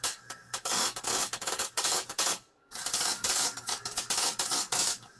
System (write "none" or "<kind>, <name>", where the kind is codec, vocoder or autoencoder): codec, DAC